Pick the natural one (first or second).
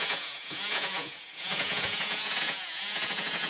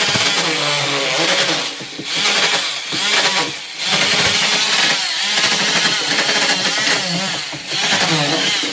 second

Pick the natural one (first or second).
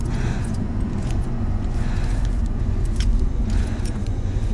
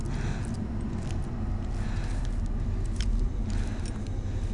second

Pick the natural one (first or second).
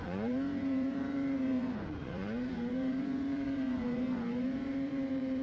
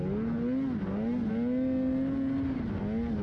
second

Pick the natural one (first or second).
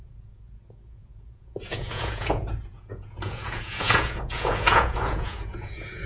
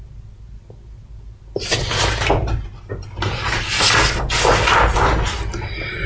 second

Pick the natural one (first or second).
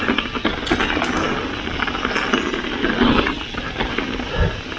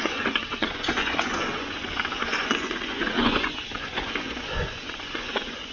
first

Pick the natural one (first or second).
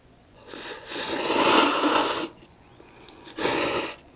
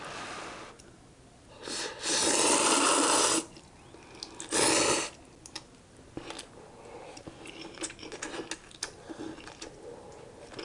second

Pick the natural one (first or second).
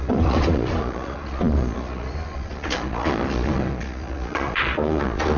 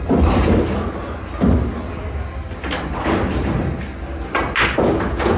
second